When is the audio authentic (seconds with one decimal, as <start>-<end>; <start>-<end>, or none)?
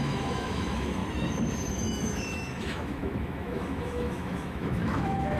1.0-1.7